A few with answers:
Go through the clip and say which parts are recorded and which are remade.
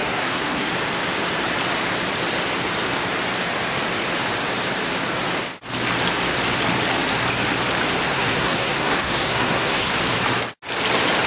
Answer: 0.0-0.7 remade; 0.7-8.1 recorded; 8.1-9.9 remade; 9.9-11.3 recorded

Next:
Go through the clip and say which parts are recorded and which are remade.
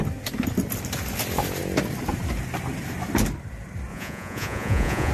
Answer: 0.0-3.9 recorded; 3.9-5.1 remade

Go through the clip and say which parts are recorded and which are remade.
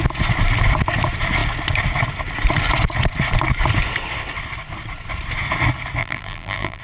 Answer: 0.0-6.0 recorded; 6.0-6.8 remade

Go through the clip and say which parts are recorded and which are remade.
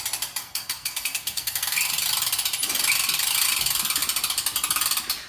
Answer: 0.0-0.4 recorded; 0.4-1.9 remade; 1.9-5.3 recorded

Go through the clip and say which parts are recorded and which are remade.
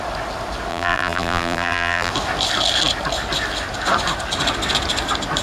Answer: 0.0-0.7 recorded; 0.7-2.1 remade; 2.1-5.4 recorded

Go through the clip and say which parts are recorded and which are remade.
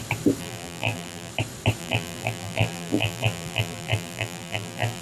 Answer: 0.0-0.4 recorded; 0.4-1.3 remade; 1.3-1.8 recorded; 1.8-5.0 remade